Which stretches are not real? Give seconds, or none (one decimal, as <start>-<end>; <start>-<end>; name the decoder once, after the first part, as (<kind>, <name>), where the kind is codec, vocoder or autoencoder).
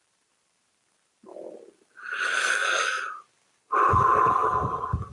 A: 2.3-3.0 (codec, SNAC)